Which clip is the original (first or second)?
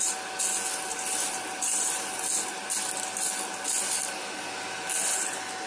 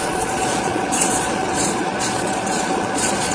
first